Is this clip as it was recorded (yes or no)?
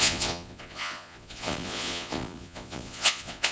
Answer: no